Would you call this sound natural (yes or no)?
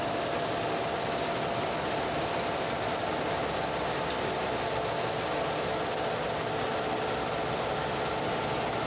yes